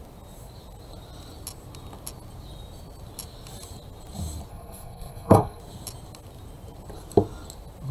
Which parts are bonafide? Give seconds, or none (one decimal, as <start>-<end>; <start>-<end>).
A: 0.0-4.5; 5.6-7.9